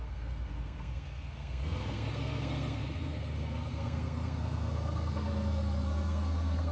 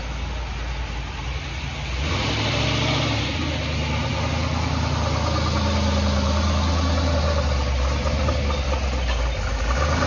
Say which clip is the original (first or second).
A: second